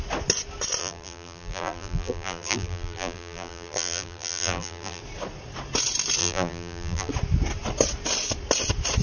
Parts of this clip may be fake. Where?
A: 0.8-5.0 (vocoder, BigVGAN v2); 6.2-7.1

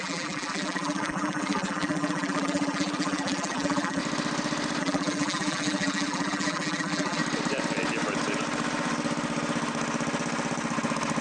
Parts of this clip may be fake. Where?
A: 0.0-4.0 (vocoder, BigVGAN v2); 4.8-7.2

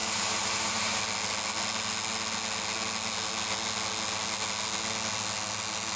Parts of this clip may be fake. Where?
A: 0.0-1.0 (vocoder, BigVGAN v2)

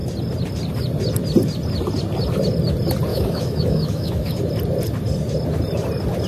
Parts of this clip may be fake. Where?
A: 3.1-4.4 (autoencoder, DAC-VAE)

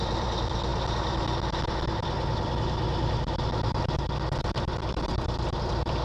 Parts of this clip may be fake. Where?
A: 0.0-6.0 (vocoder, BigVGAN v2)

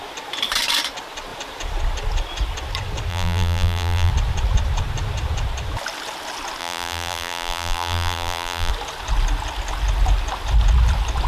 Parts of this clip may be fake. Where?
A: 3.1-4.1 (vocoder, BigVGAN v2); 6.6-8.7

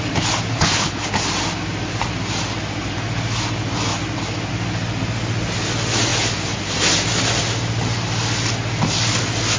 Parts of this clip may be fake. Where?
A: 0.5-1.1 (codec, HILCodec)

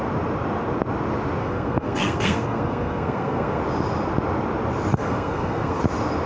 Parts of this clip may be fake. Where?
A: 1.4-3.6 (codec, SNAC); 4.9-5.8